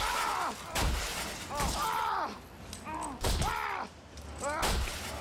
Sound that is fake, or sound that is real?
fake